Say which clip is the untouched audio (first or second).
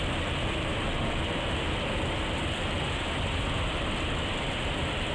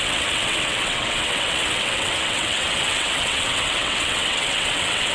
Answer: first